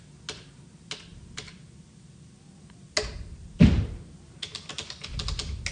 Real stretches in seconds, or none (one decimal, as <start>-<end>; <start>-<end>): 0.0-5.7